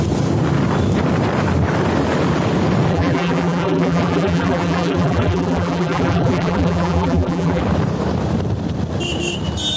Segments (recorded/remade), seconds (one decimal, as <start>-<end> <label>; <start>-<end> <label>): 0.0-2.9 recorded; 2.9-7.6 remade; 7.6-9.8 recorded